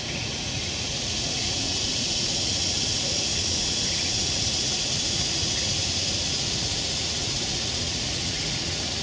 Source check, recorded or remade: remade